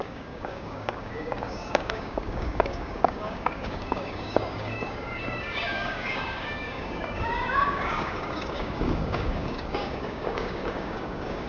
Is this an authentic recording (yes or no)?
no